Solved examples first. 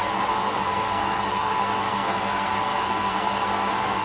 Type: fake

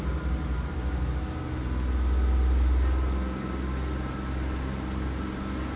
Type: real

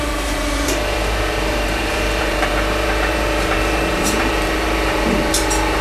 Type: fake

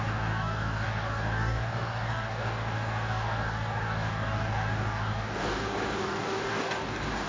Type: fake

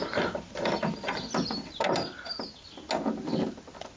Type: real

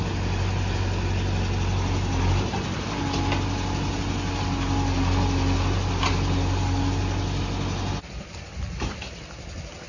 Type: real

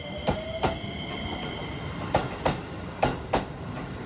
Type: real